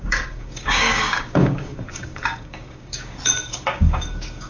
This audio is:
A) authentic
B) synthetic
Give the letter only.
B